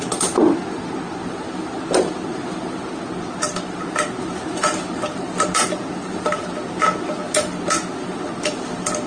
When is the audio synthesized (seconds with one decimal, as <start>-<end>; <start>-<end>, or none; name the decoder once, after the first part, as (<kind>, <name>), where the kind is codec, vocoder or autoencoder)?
none